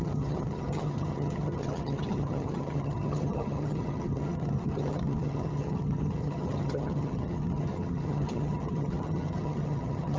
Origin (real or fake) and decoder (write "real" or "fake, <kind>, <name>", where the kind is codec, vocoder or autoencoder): fake, vocoder, HiFi-GAN